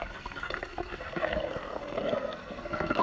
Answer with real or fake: fake